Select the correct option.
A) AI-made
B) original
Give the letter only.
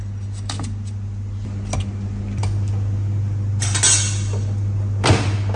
B